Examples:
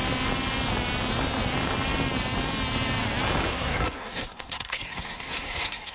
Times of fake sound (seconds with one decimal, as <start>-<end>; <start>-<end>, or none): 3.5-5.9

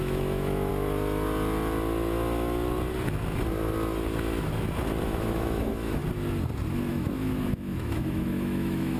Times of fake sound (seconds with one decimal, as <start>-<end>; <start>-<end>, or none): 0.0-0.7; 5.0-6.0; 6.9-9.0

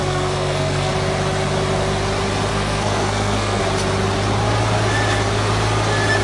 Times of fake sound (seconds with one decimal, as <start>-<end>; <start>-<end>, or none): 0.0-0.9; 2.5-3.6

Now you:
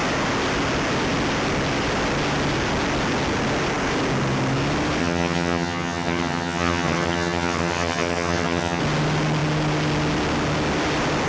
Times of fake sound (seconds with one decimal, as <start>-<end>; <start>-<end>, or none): 5.0-8.8

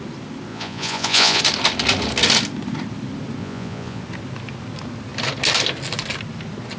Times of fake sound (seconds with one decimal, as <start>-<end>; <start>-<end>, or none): 0.5-1.4; 3.4-4.0

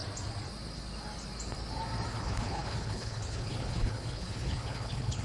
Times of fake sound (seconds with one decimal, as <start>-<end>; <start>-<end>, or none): 2.1-5.2

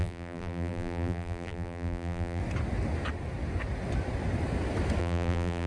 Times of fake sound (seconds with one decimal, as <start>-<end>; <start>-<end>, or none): 0.0-2.4; 5.0-5.7